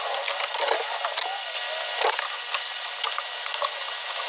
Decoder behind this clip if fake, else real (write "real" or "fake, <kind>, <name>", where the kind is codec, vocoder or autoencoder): real